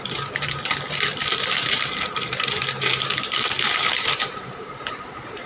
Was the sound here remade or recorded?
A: remade